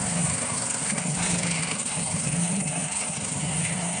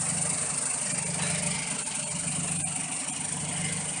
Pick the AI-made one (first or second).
first